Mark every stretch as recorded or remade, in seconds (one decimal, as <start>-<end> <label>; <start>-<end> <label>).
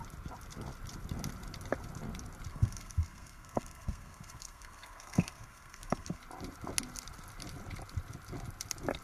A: 0.0-2.5 recorded; 2.5-6.2 remade; 6.2-9.0 recorded